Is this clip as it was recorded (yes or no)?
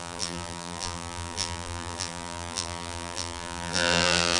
no